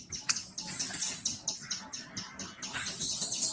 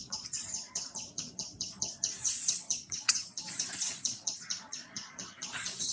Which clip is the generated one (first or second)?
second